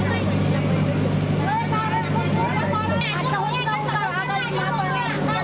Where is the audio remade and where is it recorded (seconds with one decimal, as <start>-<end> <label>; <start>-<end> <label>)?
0.0-5.4 recorded